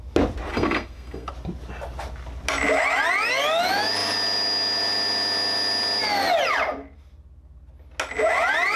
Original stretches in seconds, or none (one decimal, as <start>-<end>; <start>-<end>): 0.0-0.5; 1.3-8.8